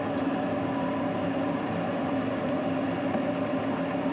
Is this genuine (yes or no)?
no